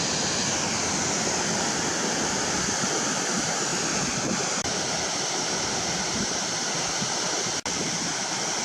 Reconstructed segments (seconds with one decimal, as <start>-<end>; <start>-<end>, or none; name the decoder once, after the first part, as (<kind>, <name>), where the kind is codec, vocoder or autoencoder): 3.7-5.8 (vocoder, BigVGAN v2)